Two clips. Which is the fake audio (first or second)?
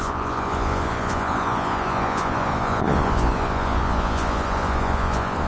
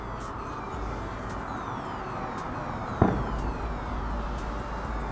first